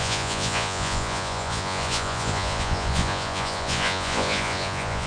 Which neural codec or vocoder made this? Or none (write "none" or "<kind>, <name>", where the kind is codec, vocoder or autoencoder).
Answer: vocoder, Vocos